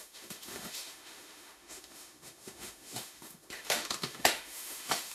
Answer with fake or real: fake